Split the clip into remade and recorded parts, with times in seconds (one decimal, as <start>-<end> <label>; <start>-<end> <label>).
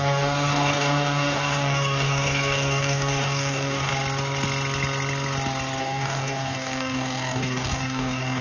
0.0-3.9 remade; 3.9-5.8 recorded; 5.8-8.4 remade